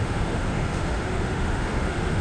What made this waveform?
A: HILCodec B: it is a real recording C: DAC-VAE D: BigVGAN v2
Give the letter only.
C